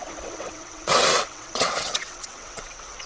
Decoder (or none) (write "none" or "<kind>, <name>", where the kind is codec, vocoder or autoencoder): vocoder, WaveNeXt